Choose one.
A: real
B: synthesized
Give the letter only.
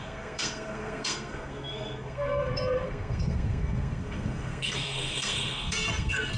B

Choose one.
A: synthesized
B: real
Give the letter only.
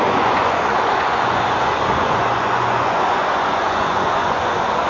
A